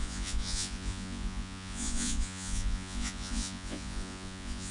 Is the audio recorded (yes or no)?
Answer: no